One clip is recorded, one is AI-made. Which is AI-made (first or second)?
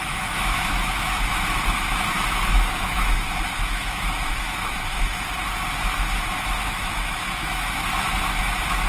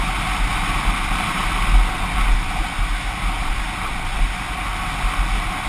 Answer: first